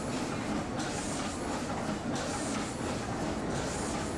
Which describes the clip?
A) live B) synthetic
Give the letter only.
A